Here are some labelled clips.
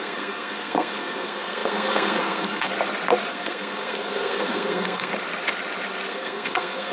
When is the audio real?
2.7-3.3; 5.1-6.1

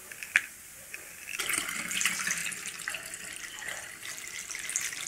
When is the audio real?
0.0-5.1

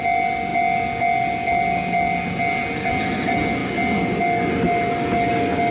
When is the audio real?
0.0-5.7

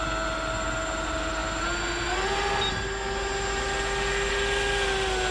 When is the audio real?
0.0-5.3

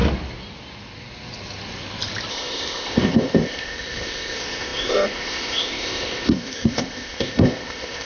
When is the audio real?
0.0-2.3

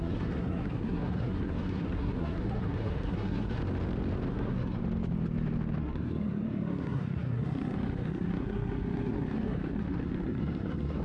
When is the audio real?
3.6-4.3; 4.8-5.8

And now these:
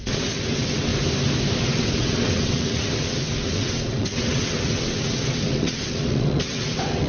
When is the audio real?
0.9-1.6

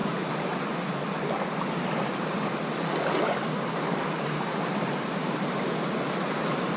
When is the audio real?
0.0-6.8